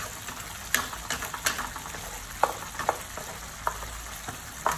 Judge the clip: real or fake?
real